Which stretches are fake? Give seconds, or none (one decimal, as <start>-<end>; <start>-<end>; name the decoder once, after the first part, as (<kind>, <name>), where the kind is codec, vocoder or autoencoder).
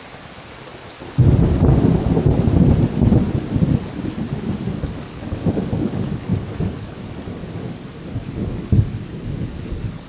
0.0-0.7 (codec, DAC); 4.4-10.1